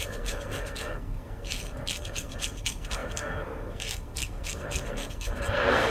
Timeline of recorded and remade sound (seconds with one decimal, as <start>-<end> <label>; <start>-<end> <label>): 0.0-5.9 remade